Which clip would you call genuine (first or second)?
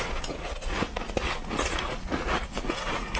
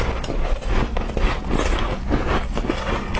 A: second